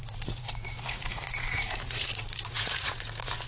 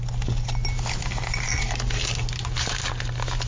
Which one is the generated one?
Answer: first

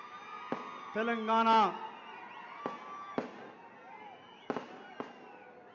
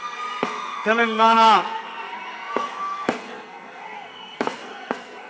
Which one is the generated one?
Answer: second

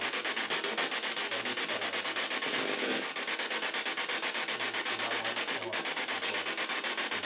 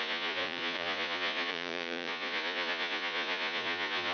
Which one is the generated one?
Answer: second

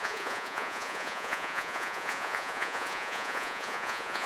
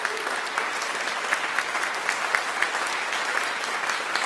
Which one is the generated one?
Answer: first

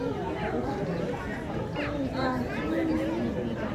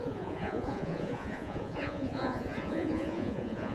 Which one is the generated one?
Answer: second